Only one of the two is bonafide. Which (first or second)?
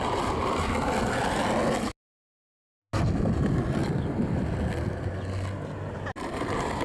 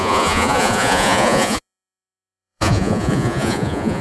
first